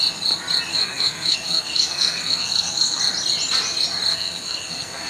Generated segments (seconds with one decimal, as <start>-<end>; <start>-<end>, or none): 0.7-3.0; 4.1-5.1